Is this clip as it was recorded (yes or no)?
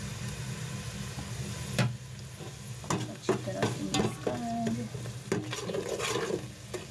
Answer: yes